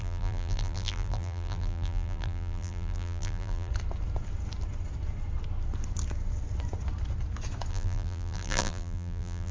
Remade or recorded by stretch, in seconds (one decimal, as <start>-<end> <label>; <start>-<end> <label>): 0.0-3.7 remade; 3.7-7.7 recorded; 7.7-9.5 remade